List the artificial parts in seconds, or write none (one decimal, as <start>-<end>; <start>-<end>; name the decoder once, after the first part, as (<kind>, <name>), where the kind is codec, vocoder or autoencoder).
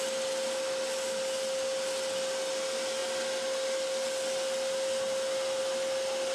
none